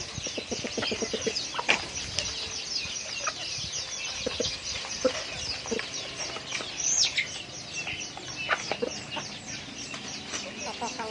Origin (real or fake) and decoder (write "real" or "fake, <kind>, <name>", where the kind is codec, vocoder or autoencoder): real